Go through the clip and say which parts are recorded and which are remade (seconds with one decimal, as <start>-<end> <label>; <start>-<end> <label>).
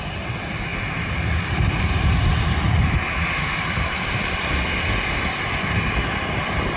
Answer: 0.0-6.8 recorded